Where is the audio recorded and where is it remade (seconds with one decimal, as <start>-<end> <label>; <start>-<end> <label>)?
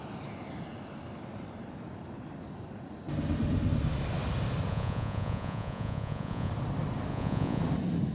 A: 0.0-4.7 recorded; 4.7-6.5 remade; 6.5-7.1 recorded; 7.1-7.6 remade; 7.6-8.1 recorded